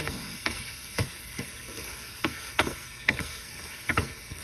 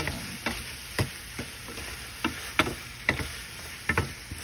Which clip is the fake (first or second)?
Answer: first